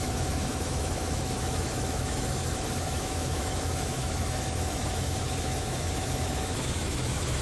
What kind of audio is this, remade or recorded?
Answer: remade